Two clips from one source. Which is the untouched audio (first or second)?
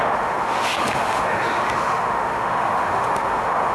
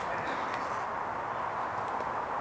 second